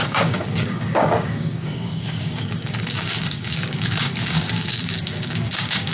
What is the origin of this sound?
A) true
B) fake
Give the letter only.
B